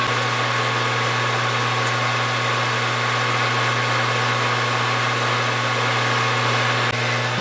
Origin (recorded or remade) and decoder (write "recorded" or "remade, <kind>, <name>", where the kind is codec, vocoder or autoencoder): recorded